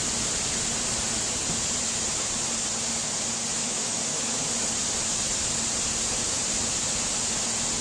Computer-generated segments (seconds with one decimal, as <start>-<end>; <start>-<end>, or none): 3.5-4.0